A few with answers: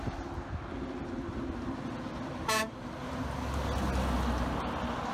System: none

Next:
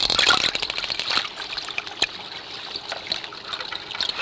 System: none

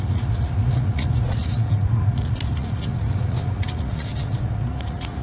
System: vocoder, Vocos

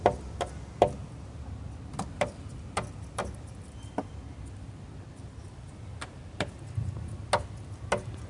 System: none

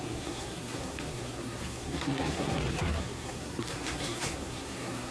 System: codec, SNAC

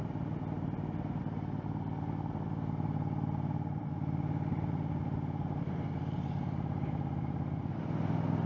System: none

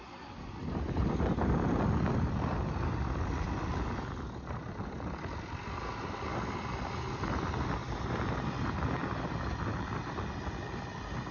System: none